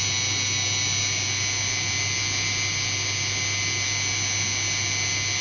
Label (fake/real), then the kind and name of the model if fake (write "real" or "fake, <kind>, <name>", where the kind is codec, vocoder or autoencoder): real